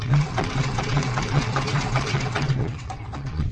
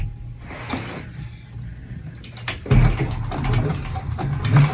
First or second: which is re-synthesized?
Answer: first